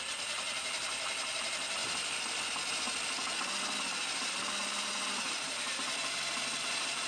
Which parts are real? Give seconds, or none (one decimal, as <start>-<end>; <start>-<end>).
0.0-7.1